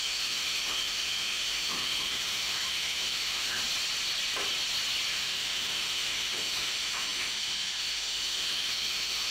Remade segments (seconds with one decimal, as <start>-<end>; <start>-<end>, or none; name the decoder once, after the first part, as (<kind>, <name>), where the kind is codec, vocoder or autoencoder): 0.0-3.6 (autoencoder, DAC-VAE); 5.1-9.3